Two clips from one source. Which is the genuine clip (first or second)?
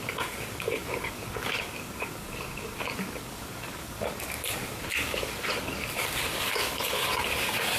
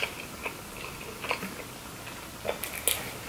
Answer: second